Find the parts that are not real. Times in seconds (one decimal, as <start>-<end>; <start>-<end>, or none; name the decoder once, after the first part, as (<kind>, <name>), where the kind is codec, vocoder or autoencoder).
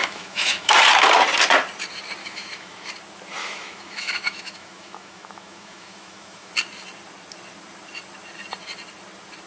0.0-0.7 (autoencoder, DAC-VAE); 2.2-2.9; 3.4-6.5